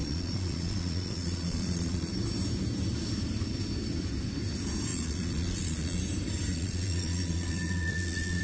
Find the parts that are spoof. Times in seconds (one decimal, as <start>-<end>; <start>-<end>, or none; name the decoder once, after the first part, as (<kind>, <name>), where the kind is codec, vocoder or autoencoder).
0.0-2.1 (vocoder, Vocos); 4.9-6.0; 6.5-8.4